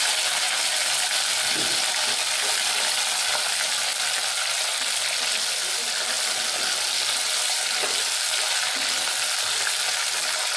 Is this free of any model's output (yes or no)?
yes